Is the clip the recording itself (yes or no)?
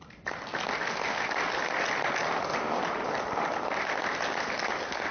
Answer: yes